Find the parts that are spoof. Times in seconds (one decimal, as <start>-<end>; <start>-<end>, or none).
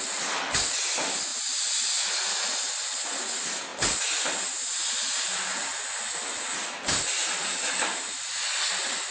none